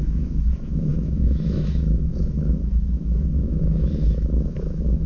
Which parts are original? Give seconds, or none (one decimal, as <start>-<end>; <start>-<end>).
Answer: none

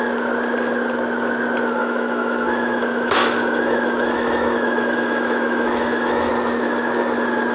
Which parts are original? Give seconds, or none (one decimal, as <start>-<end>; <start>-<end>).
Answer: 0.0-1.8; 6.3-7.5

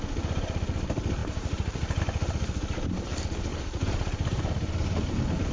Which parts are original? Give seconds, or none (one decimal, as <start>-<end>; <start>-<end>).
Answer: 0.0-1.2; 2.0-3.5; 5.1-5.5